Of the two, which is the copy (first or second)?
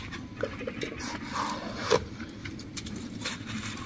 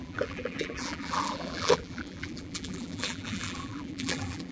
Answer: second